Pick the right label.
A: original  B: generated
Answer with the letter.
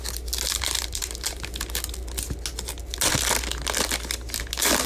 A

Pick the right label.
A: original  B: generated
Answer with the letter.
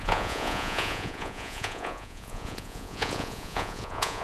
B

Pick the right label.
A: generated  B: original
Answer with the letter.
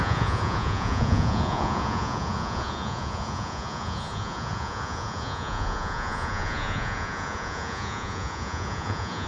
A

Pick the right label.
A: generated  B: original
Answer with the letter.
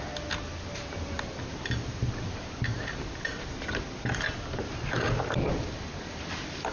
B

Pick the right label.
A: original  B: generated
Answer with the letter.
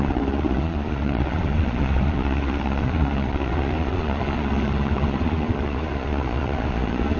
B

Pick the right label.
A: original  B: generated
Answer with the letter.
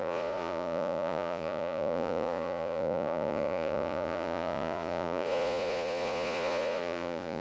B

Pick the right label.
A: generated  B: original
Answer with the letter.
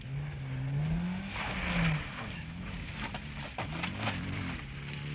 B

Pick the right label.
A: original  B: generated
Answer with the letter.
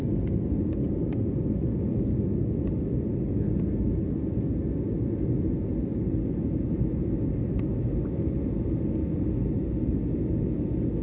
A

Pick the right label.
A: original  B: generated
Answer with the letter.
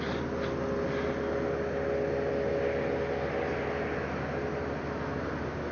A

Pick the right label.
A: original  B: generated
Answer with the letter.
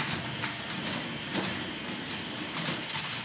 A